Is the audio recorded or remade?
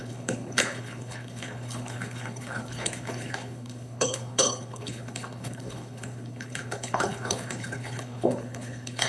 remade